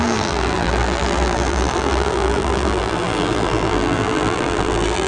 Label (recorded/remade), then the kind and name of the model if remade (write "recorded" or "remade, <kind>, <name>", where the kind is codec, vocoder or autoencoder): remade, vocoder, BigVGAN v2